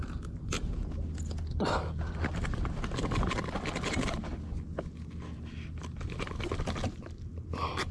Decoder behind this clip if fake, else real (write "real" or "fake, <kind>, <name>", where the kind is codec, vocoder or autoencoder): real